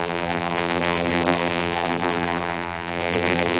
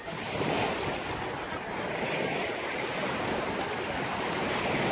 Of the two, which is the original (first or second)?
second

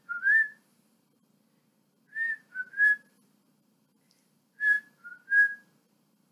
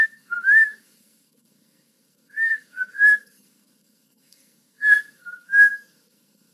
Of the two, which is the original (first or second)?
first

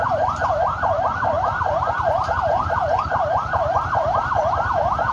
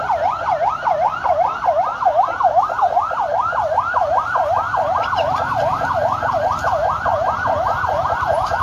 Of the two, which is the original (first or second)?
second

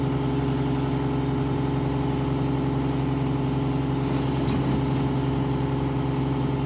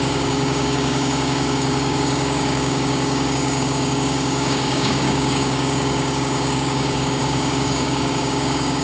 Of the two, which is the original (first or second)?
first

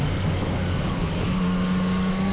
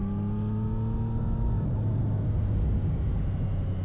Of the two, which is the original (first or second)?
second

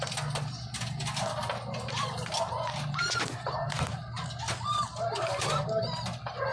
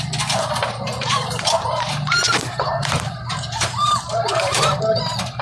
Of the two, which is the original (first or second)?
first